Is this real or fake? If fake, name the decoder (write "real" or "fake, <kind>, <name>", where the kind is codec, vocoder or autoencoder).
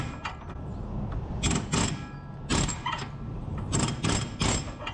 real